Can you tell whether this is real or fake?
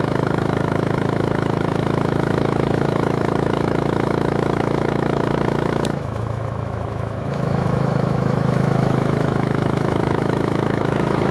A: fake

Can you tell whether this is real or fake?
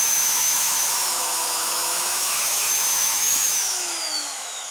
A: fake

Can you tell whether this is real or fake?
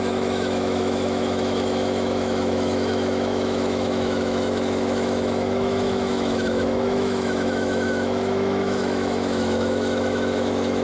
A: fake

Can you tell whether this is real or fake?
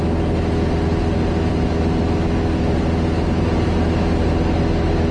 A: real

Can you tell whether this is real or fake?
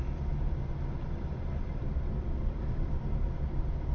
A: real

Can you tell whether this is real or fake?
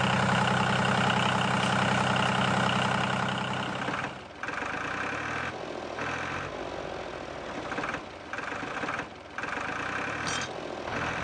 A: real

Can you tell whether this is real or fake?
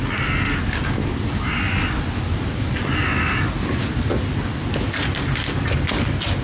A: real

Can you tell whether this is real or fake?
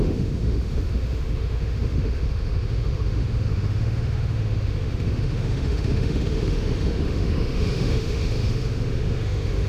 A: fake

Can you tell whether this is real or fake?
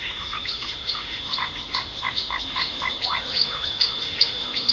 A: fake